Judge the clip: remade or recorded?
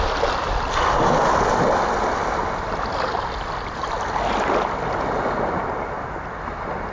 recorded